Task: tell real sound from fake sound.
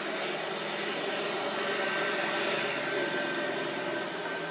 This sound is real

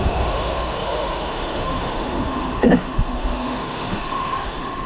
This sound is fake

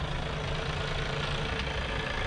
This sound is real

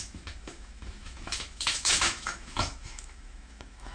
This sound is fake